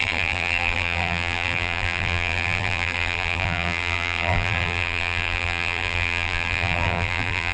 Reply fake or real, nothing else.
fake